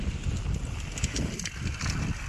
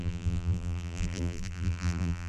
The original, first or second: first